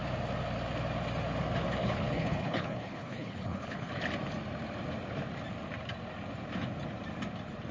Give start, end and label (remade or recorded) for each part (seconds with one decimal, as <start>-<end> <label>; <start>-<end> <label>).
0.0-1.8 recorded; 1.8-3.9 remade; 3.9-7.7 recorded